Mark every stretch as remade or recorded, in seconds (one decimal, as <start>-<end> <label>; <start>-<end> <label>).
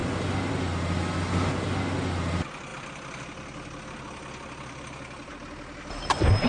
0.0-6.5 recorded